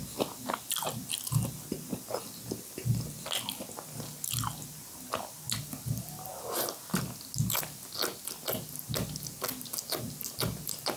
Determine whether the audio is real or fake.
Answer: real